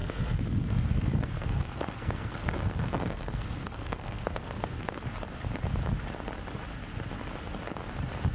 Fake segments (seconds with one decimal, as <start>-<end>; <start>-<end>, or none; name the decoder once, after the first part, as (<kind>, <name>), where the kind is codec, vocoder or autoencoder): 0.0-5.0 (codec, SNAC)

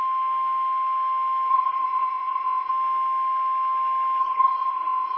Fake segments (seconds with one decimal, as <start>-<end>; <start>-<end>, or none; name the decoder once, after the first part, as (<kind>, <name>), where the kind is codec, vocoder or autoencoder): 1.5-2.7 (codec, SNAC); 4.2-5.2

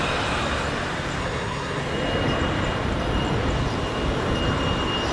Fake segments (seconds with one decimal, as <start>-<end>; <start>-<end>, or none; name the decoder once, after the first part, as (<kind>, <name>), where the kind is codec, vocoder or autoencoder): 1.2-1.8 (codec, SNAC)

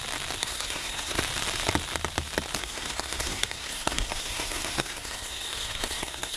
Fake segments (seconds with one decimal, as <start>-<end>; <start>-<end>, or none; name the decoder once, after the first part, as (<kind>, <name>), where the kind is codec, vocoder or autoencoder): 0.4-1.2 (codec, SNAC); 2.6-6.4